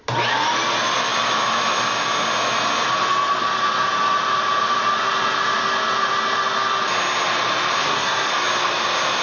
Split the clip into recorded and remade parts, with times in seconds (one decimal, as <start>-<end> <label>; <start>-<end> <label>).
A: 0.0-7.8 recorded; 7.8-8.3 remade; 8.3-9.2 recorded